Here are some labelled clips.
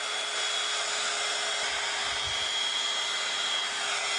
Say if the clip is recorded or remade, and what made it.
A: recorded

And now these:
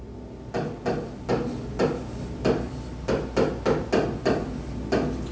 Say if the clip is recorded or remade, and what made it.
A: recorded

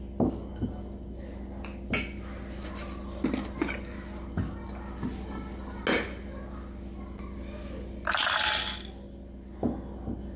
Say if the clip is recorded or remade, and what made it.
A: recorded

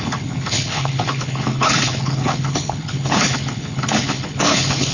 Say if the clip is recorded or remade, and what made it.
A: remade, codec, HILCodec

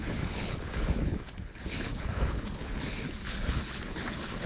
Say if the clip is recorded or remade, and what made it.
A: remade, codec, HILCodec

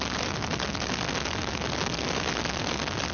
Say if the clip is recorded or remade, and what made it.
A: recorded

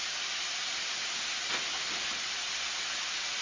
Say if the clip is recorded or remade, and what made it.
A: recorded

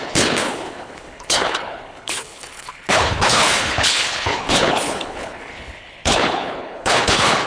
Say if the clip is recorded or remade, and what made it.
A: remade, codec, HILCodec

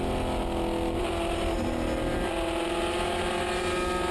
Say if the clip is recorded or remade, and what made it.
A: recorded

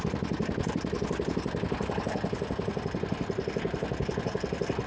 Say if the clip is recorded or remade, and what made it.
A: recorded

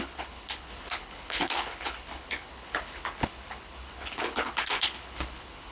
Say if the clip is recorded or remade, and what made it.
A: remade, codec, HILCodec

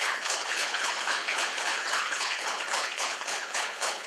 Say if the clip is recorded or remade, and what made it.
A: remade, codec, HILCodec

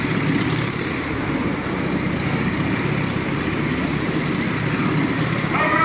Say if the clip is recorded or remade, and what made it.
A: recorded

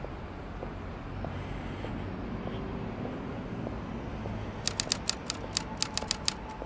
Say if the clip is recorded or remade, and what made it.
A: recorded